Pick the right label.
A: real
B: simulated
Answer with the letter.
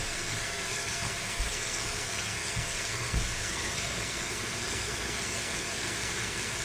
B